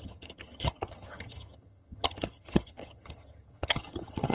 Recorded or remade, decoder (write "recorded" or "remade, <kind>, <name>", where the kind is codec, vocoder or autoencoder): remade, vocoder, HiFi-GAN